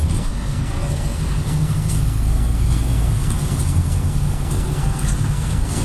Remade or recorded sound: remade